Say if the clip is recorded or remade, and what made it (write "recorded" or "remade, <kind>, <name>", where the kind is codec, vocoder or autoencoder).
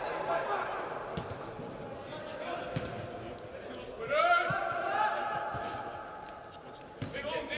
recorded